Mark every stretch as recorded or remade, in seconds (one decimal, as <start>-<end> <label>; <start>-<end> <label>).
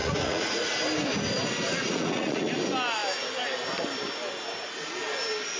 0.0-0.7 remade; 0.7-1.7 recorded; 1.7-2.5 remade; 2.5-5.6 recorded